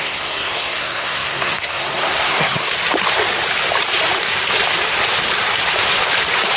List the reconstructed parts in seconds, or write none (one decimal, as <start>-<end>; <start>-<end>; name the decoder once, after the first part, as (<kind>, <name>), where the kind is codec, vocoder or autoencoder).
0.0-2.7 (codec, SNAC)